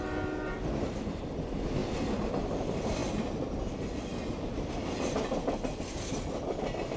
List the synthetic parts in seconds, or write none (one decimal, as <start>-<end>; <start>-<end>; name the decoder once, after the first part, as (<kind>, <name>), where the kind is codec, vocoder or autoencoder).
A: none